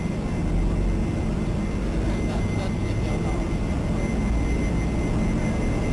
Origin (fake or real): real